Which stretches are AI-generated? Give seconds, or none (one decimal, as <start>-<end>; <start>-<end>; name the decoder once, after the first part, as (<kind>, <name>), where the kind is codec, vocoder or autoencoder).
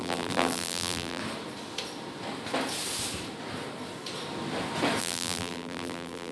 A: 0.0-1.2 (vocoder, BigVGAN v2); 5.0-6.3